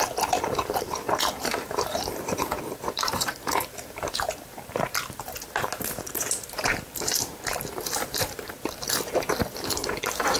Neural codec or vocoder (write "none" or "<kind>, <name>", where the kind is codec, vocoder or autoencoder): vocoder, BigVGAN v2